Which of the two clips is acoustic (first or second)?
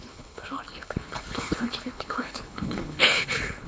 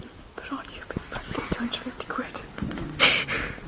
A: second